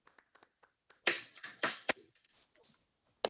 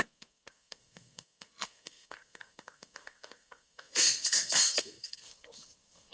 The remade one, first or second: second